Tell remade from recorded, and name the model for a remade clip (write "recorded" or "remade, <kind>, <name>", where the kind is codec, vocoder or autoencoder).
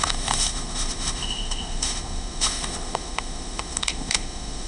remade, autoencoder, DAC-VAE